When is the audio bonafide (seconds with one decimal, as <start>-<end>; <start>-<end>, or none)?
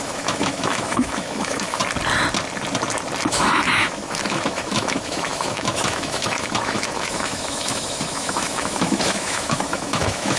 1.8-3.3